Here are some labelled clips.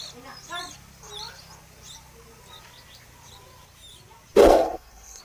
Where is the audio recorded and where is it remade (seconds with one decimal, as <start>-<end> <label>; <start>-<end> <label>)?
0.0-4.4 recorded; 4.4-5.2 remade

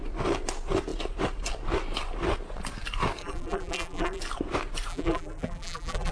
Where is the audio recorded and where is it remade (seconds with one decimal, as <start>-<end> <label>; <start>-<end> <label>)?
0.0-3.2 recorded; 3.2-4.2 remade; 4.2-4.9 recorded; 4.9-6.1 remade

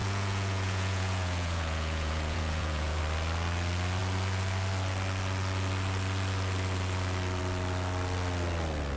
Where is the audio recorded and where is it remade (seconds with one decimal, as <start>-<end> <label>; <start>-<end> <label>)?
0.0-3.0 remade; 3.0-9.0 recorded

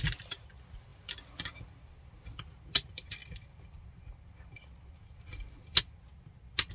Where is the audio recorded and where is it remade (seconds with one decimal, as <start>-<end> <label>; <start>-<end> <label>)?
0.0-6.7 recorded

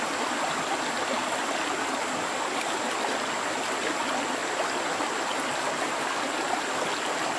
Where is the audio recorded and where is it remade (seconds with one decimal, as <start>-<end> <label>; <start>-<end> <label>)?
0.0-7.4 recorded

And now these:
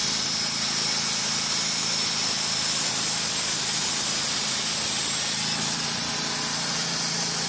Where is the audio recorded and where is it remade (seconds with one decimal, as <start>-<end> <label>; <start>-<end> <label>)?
0.0-7.5 recorded

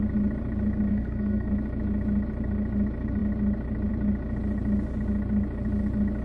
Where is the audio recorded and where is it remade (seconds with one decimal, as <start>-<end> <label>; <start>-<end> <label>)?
0.0-0.9 recorded; 0.9-1.5 remade; 1.5-6.2 recorded